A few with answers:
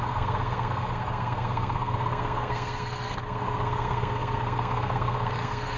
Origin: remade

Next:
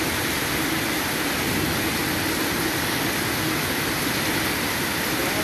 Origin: recorded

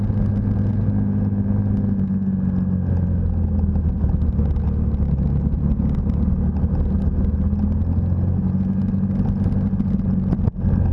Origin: recorded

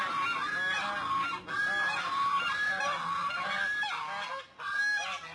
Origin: recorded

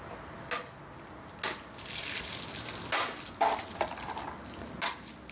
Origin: recorded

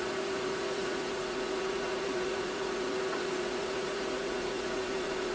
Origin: remade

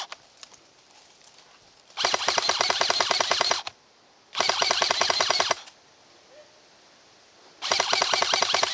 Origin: remade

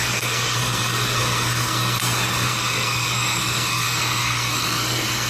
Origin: remade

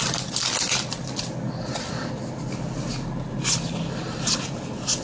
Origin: recorded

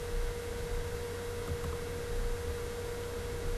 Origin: recorded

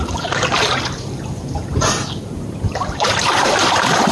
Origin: remade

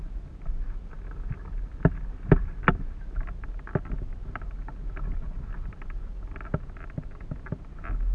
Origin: recorded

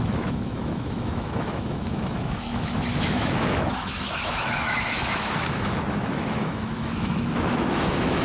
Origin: remade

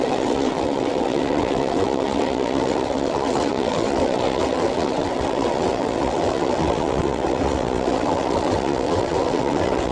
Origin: remade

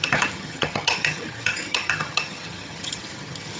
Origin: remade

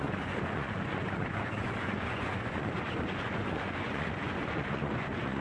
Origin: remade